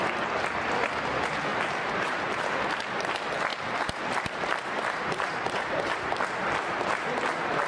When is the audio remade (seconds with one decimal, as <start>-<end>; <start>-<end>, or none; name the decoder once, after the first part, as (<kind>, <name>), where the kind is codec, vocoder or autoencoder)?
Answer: 1.5-2.2 (vocoder, BigVGAN v2); 3.5-6.1